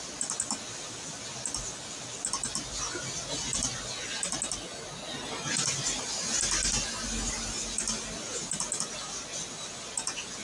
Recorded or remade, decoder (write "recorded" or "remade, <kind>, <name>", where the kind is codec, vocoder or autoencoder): recorded